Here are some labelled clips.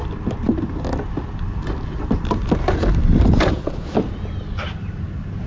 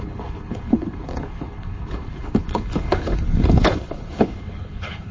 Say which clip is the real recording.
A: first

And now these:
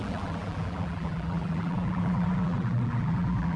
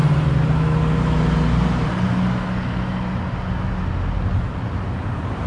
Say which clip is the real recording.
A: second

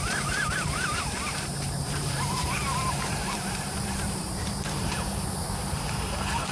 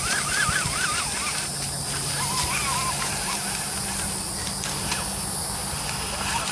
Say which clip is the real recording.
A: second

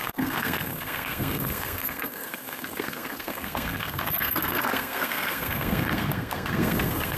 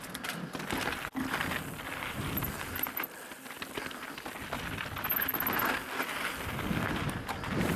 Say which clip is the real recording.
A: second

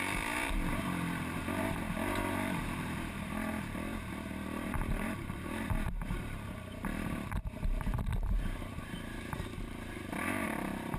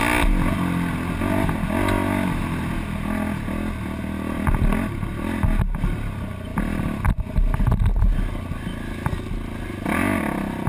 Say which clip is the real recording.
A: second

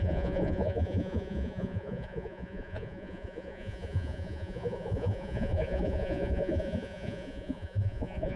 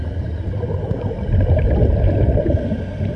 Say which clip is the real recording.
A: second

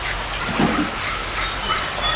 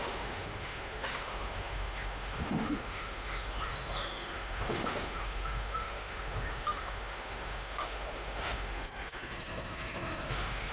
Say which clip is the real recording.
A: first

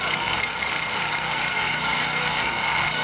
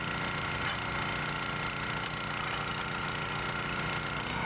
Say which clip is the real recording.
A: second